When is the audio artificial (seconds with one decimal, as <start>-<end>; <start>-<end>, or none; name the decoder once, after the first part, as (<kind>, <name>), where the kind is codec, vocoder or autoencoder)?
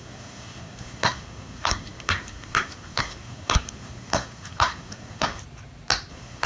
0.0-5.4 (codec, SNAC); 6.1-6.5